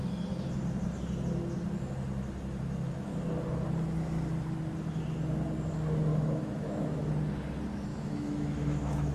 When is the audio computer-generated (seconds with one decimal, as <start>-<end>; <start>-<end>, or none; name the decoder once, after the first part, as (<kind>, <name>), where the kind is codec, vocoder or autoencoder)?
6.1-7.1 (autoencoder, DAC-VAE); 7.9-9.1